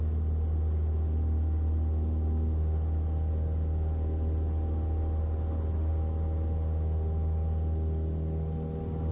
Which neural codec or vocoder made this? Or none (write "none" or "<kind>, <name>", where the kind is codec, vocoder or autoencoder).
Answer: none